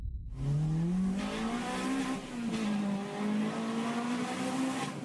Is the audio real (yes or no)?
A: yes